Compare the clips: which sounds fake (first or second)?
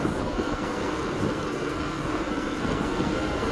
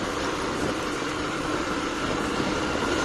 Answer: first